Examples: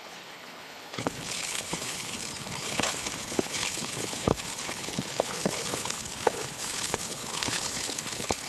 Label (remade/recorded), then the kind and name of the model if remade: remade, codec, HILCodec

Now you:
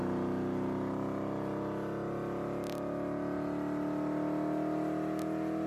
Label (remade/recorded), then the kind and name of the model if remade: recorded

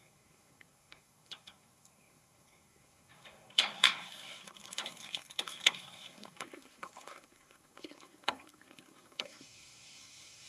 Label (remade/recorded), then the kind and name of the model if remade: remade, codec, SNAC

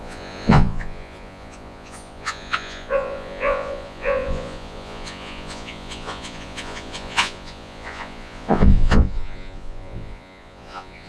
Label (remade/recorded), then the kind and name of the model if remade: remade, vocoder, Vocos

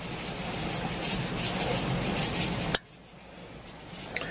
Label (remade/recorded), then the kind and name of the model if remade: recorded